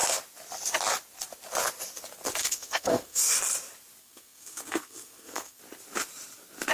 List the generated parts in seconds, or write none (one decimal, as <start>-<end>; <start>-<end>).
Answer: 2.4-3.2; 4.0-5.6